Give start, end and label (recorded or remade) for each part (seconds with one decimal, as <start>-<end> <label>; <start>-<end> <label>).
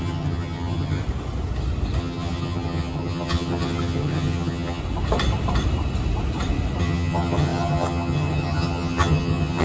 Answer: 0.0-1.0 remade; 1.0-2.0 recorded; 2.0-4.8 remade; 4.8-6.8 recorded; 6.8-9.6 remade